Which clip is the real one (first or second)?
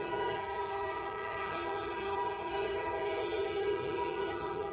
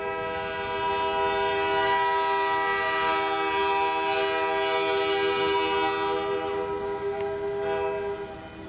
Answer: second